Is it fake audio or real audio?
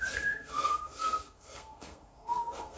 fake